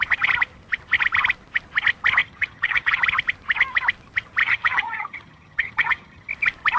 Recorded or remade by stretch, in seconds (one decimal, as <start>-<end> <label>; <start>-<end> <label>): 0.0-2.2 recorded; 2.2-3.0 remade; 3.0-4.4 recorded; 4.4-6.3 remade; 6.3-6.8 recorded